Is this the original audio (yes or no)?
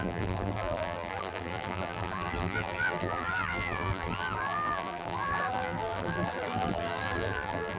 no